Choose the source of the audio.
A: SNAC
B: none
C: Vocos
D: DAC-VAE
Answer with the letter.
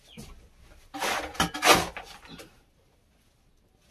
B